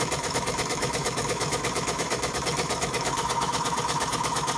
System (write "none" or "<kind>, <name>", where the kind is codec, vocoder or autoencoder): autoencoder, DAC-VAE